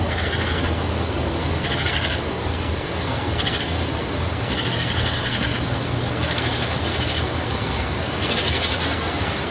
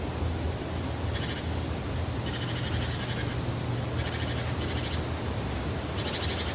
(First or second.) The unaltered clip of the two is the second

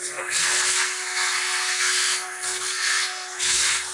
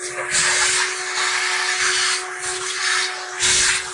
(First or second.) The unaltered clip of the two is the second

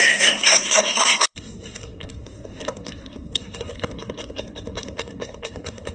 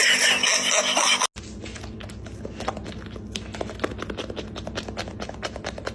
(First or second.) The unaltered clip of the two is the second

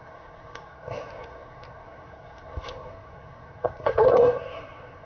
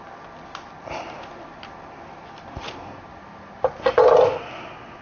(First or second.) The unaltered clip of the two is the second